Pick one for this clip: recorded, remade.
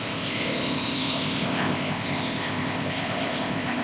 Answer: remade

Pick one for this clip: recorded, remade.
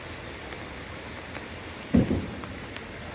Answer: recorded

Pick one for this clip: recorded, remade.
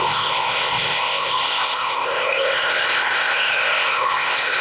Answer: remade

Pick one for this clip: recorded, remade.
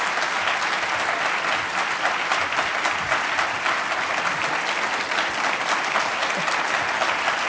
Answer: recorded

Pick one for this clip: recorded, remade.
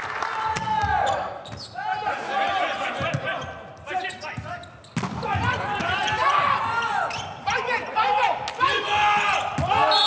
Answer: recorded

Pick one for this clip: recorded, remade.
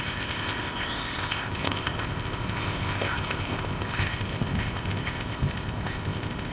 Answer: remade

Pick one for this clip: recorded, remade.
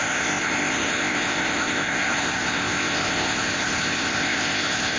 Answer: remade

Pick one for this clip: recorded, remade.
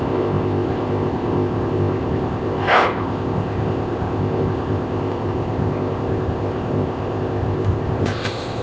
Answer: remade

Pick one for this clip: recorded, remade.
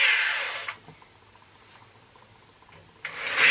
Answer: recorded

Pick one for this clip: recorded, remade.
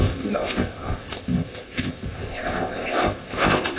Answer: remade